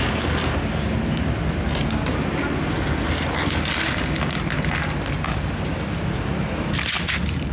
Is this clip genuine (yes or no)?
yes